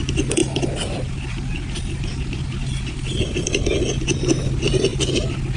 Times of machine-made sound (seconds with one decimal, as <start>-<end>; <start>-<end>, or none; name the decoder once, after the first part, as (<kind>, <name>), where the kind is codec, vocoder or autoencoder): none